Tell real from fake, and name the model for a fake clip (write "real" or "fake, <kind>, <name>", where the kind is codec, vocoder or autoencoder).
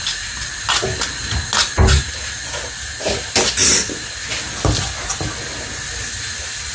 real